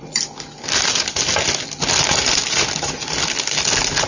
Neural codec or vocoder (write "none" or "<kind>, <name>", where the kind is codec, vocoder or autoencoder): none